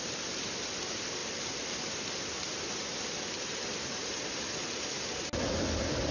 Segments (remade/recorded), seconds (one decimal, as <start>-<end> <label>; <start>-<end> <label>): 0.0-6.1 recorded